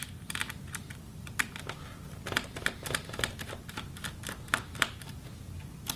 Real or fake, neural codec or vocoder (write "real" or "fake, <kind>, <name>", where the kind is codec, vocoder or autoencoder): real